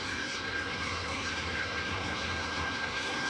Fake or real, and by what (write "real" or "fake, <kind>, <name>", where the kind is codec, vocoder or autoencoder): fake, codec, SNAC